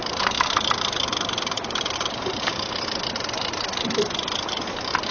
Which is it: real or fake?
fake